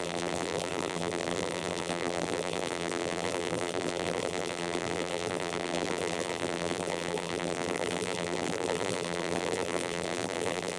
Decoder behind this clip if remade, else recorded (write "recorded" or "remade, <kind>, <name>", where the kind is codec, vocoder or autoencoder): remade, vocoder, BigVGAN v2